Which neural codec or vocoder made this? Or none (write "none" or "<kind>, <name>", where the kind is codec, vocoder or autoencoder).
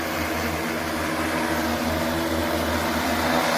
none